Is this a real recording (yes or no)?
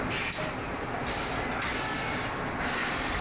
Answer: yes